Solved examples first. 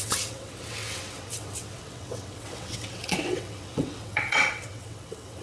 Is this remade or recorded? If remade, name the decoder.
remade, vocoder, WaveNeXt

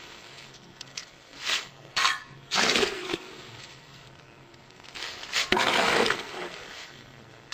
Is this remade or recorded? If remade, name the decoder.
remade, codec, SNAC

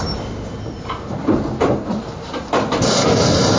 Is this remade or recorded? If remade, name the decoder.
recorded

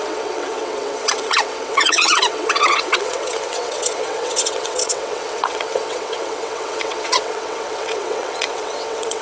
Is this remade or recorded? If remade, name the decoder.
remade, vocoder, WaveNeXt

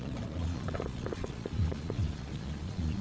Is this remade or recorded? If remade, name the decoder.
remade, vocoder, Vocos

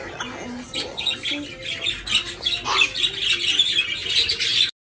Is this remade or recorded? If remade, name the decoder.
recorded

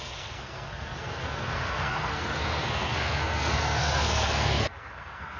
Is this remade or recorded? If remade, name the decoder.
remade, codec, SNAC